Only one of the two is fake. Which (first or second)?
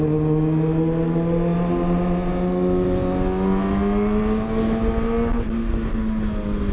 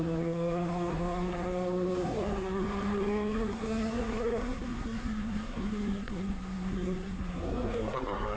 second